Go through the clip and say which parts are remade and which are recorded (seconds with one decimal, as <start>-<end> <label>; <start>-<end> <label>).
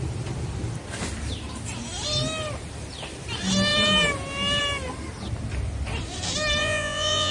0.0-6.6 recorded; 6.6-7.3 remade